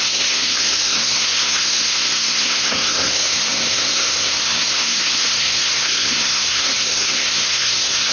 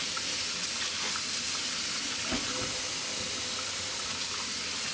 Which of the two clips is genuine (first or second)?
second